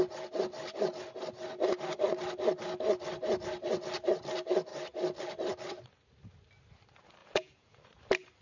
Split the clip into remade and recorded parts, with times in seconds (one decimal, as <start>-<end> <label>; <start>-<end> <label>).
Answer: 0.0-7.2 recorded; 7.2-7.8 remade; 7.8-8.4 recorded